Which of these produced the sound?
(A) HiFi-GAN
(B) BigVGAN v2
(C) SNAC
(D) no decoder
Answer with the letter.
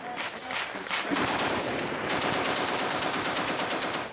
B